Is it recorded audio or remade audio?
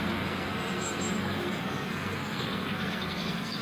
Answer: remade